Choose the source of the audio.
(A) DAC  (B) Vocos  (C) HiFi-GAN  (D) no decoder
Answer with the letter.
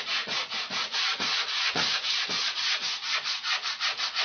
B